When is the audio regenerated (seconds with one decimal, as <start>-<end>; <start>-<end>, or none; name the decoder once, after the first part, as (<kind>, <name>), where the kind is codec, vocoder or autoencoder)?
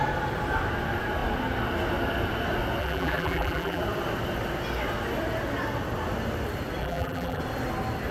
2.8-3.8 (vocoder, BigVGAN v2); 6.8-7.4